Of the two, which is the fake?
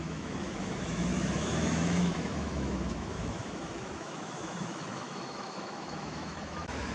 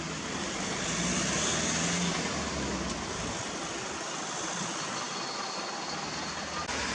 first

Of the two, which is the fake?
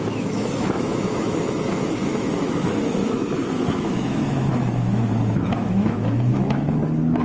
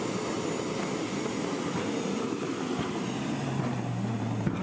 first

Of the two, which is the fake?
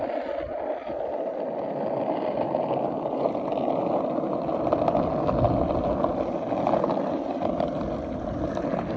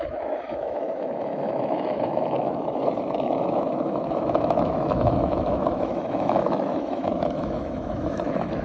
second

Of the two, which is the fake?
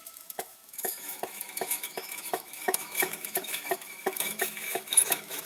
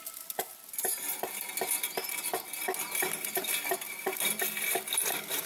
first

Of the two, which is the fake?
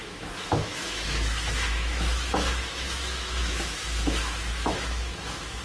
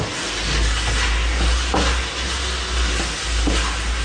first